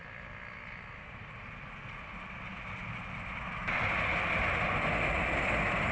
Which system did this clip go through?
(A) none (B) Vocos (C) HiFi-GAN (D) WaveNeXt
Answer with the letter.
A